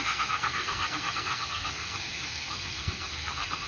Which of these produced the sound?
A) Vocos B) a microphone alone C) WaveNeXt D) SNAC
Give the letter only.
D